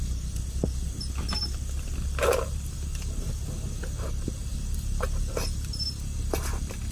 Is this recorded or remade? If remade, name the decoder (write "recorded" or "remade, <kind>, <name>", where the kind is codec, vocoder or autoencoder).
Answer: recorded